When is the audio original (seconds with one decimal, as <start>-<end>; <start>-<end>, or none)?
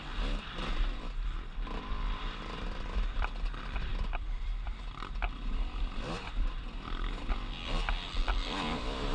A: 0.0-0.6